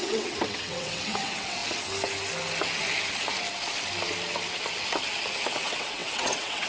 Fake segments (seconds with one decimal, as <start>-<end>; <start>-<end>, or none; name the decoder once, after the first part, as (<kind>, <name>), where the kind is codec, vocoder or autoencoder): 0.0-1.6 (vocoder, WaveNeXt); 5.6-6.7